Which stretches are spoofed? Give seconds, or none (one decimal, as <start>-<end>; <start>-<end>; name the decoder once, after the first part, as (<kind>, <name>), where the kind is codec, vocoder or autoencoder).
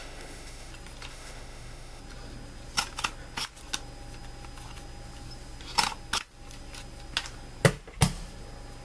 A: 0.0-0.7 (autoencoder, DAC-VAE); 1.1-2.0